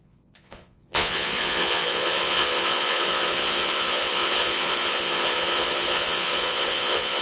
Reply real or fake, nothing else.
fake